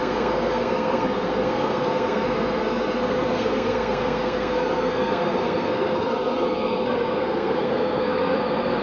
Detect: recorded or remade remade